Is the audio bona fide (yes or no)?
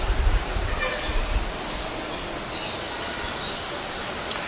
yes